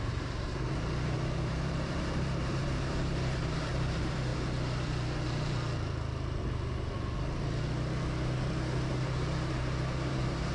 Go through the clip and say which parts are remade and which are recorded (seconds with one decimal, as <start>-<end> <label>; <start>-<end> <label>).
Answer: 0.0-4.3 remade; 4.3-8.9 recorded; 8.9-10.5 remade